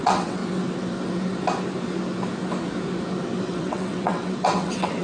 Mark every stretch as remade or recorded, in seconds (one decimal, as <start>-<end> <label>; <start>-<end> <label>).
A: 0.0-0.4 remade; 0.4-3.4 recorded; 3.4-5.0 remade